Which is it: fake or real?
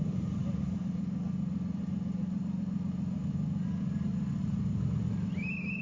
real